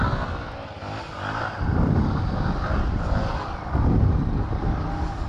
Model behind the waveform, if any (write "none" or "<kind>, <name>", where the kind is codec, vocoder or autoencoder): none